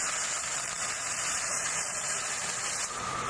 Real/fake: fake